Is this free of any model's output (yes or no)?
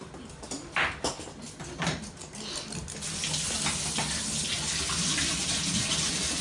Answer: yes